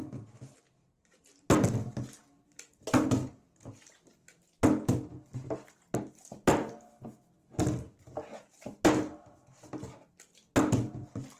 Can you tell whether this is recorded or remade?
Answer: recorded